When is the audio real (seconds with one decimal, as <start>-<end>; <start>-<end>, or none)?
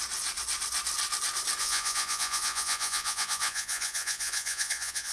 0.0-1.6